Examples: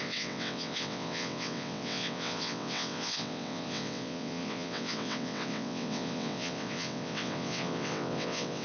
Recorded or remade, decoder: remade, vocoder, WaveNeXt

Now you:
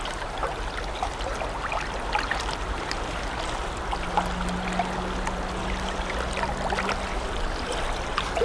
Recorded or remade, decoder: recorded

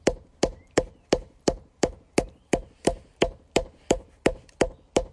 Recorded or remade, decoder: remade, vocoder, BigVGAN v2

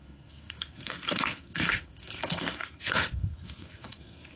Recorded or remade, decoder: remade, codec, SNAC